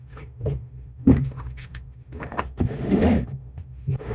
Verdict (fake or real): fake